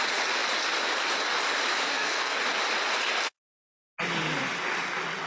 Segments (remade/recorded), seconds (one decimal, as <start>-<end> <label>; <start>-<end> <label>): 0.0-1.8 recorded; 1.8-2.4 remade; 2.4-5.3 recorded